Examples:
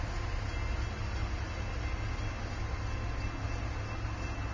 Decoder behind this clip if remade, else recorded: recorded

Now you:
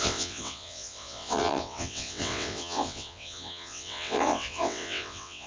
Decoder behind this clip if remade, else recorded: remade, vocoder, WaveNeXt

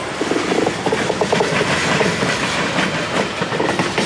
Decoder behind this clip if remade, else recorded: recorded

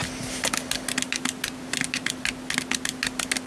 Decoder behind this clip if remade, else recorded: recorded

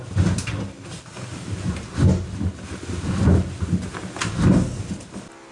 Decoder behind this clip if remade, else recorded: recorded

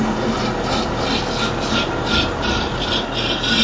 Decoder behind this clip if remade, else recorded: recorded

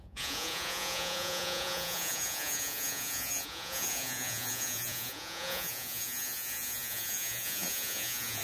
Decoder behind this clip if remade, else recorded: remade, vocoder, Vocos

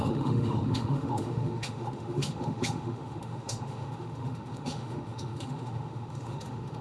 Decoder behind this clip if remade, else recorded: remade, autoencoder, DAC-VAE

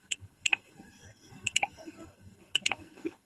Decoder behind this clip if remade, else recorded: remade, codec, SNAC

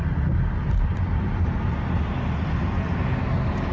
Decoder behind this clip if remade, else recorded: recorded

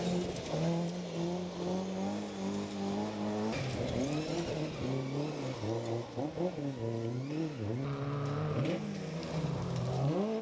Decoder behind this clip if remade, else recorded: recorded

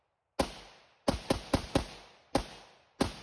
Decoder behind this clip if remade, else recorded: recorded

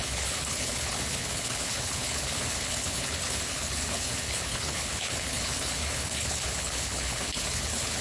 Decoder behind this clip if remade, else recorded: remade, codec, HILCodec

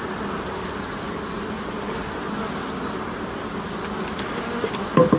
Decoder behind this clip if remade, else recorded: recorded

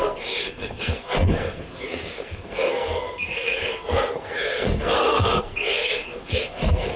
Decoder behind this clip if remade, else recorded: remade, codec, SNAC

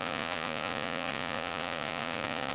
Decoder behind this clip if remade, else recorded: remade, vocoder, Vocos